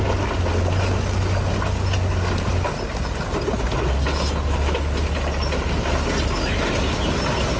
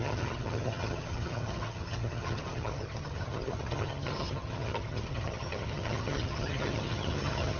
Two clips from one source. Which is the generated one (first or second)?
second